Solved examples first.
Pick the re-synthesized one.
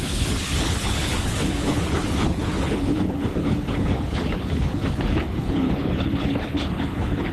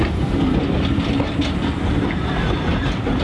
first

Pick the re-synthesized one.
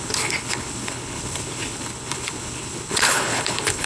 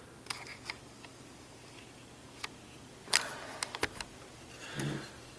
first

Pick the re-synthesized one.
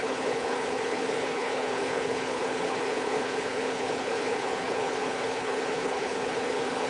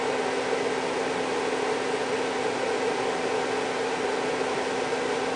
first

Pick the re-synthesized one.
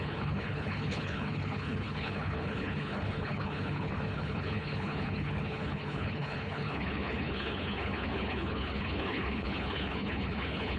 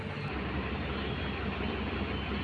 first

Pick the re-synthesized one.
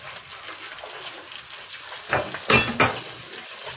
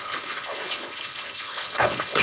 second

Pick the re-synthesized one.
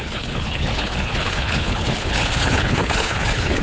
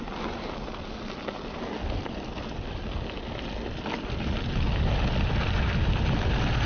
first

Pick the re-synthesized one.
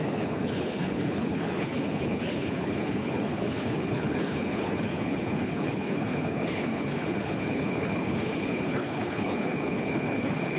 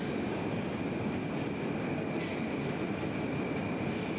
first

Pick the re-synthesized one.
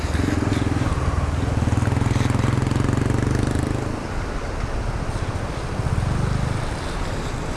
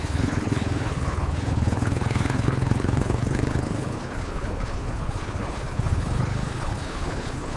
second